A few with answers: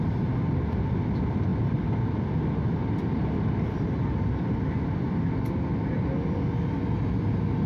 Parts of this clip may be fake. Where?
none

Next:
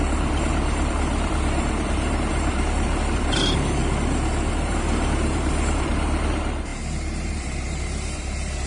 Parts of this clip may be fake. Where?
0.0-3.8; 4.5-8.7

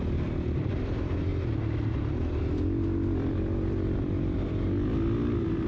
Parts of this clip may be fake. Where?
0.0-1.3; 2.4-5.7

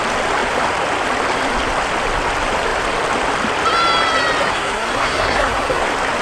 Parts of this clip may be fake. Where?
4.5-5.8

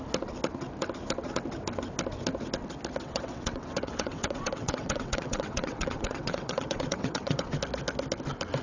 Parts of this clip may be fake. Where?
3.0-7.6

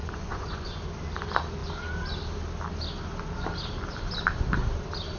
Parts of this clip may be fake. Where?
0.0-0.8